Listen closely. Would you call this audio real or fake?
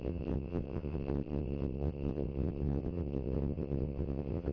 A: fake